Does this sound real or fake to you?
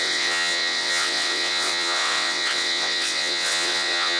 fake